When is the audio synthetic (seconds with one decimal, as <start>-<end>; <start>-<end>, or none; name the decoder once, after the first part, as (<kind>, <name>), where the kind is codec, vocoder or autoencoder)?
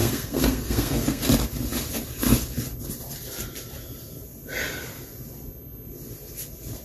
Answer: 0.0-1.2 (codec, SNAC)